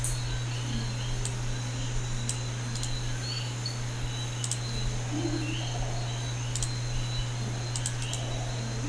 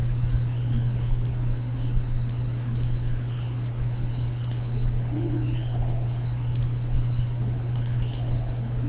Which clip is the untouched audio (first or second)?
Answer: first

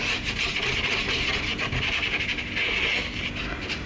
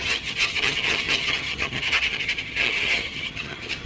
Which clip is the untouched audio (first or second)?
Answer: first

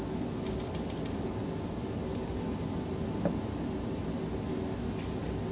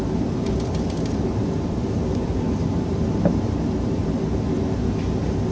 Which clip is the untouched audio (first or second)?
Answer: first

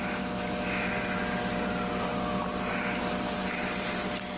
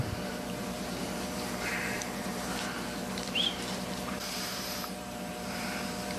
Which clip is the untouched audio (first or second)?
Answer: first